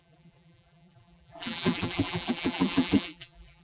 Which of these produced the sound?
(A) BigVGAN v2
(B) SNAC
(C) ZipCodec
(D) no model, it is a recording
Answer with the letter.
A